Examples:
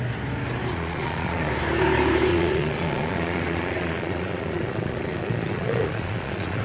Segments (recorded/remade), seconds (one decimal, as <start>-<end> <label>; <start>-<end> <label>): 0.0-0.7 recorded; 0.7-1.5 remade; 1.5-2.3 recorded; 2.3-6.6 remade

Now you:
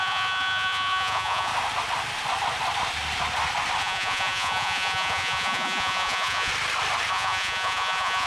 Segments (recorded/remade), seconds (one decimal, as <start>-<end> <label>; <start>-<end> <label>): 0.0-1.5 remade; 1.5-3.8 recorded; 3.8-6.5 remade; 6.5-7.1 recorded; 7.1-8.3 remade

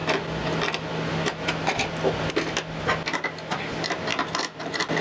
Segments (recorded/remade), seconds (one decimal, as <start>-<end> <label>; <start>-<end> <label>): 0.0-5.0 recorded

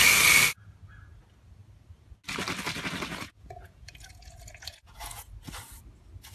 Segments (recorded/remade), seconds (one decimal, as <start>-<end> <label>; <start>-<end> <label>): 0.0-3.1 recorded; 3.1-5.3 remade; 5.3-6.3 recorded

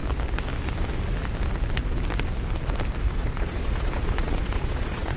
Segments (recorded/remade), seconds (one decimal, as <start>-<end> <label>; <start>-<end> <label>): 0.0-3.1 recorded; 3.1-5.2 remade

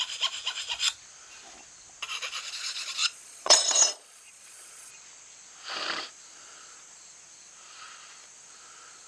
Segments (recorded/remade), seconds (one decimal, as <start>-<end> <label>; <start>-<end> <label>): 0.0-3.0 recorded; 3.0-4.9 remade; 4.9-9.1 recorded

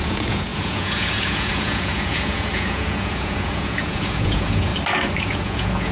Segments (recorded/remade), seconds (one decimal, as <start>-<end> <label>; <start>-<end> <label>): 0.0-4.7 remade; 4.7-5.2 recorded; 5.2-5.9 remade